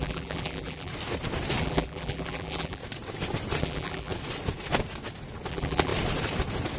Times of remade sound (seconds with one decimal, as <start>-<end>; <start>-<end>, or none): 0.0-0.9; 1.6-2.8; 3.6-4.1; 5.5-5.9